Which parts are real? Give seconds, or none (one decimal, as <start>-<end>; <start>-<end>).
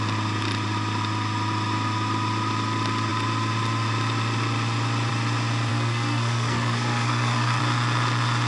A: 0.0-5.7; 7.6-8.5